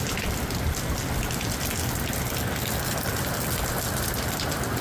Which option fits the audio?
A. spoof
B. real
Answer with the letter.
B